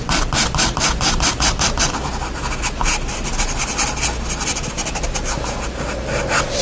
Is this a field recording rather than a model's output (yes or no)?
yes